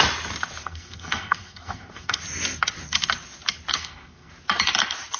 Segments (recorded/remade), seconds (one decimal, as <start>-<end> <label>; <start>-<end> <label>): 0.0-0.6 recorded; 0.6-2.2 remade; 2.2-3.7 recorded; 3.7-4.3 remade; 4.3-5.2 recorded